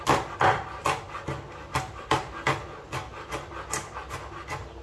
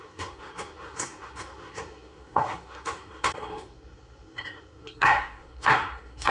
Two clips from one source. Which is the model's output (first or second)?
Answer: second